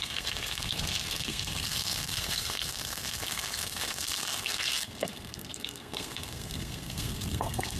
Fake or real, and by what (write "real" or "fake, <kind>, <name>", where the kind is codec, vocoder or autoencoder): fake, codec, SNAC